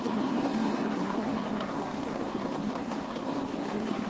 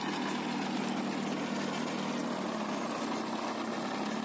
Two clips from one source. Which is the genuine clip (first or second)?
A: second